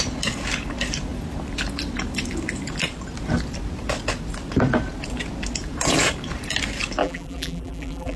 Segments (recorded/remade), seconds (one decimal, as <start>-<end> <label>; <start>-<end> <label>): 0.0-7.0 recorded; 7.0-8.2 remade